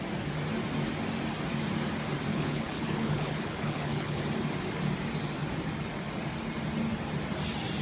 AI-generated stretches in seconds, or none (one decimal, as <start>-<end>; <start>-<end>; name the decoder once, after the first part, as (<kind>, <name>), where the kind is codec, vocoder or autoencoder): 2.3-4.2 (codec, HILCodec)